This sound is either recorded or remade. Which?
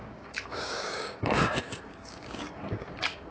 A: remade